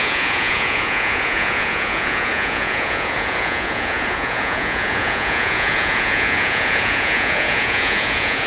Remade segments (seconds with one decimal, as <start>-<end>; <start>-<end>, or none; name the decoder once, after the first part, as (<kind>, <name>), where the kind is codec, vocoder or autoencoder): 0.0-8.5 (vocoder, Vocos)